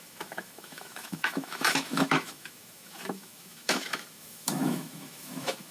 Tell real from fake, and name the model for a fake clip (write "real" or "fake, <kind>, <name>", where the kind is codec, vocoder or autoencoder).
fake, autoencoder, DAC-VAE